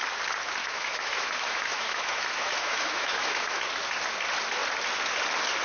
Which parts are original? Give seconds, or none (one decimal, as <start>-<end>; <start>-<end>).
0.0-0.6; 3.6-5.6